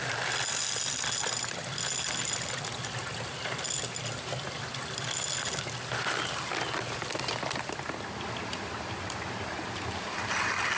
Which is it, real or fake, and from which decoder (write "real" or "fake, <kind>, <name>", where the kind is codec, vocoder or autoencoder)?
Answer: real